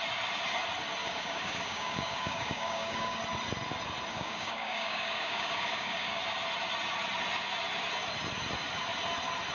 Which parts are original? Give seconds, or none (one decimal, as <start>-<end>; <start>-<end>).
0.0-1.0; 3.2-4.1; 6.2-9.5